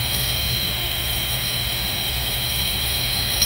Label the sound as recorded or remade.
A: remade